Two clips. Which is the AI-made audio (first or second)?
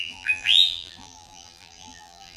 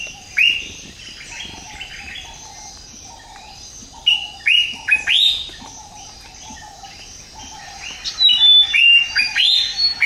first